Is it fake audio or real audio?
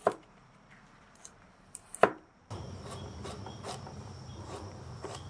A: fake